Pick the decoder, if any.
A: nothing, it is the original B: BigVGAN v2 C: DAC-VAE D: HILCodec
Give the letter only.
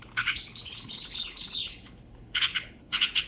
D